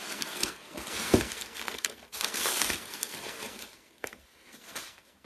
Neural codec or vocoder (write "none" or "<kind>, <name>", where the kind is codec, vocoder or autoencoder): codec, SNAC